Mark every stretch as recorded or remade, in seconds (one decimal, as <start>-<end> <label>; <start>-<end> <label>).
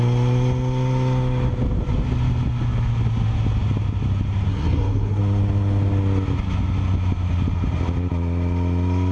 0.0-4.5 recorded; 4.5-5.2 remade; 5.2-9.1 recorded